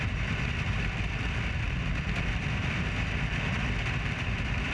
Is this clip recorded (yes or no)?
no